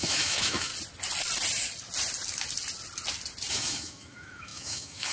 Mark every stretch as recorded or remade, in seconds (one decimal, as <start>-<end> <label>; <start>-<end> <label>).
0.0-0.7 remade; 0.7-3.5 recorded; 3.5-5.1 remade